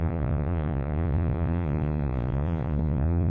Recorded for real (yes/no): no